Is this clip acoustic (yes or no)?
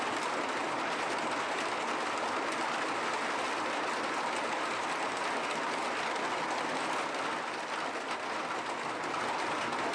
yes